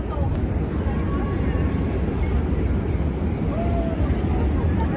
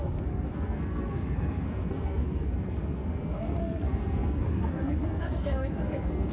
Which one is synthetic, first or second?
second